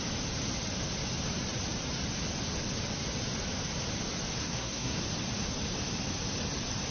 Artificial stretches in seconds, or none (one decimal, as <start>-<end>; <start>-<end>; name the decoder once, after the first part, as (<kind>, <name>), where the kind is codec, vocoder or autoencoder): 4.4-5.0 (codec, SNAC)